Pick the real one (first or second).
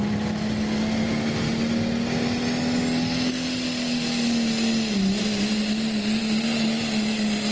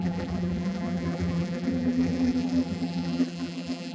first